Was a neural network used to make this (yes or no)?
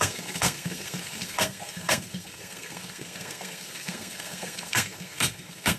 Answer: yes